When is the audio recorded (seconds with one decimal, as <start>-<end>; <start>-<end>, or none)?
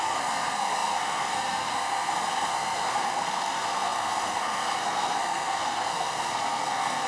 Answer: none